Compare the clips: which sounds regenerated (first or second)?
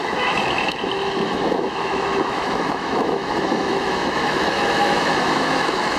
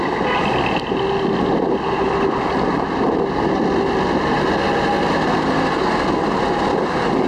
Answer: first